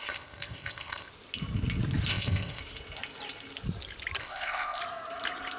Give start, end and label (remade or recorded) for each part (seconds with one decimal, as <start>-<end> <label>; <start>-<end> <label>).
0.0-1.1 remade; 1.1-2.1 recorded; 2.1-2.6 remade; 2.6-4.2 recorded; 4.2-4.8 remade; 4.8-5.6 recorded